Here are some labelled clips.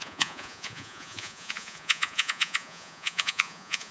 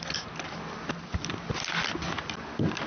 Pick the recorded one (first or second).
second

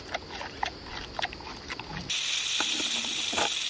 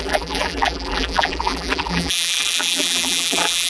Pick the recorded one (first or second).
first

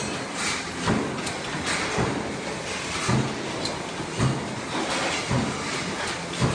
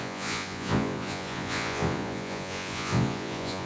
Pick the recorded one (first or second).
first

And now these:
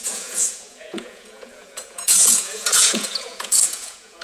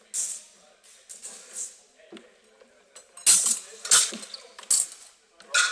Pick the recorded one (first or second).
second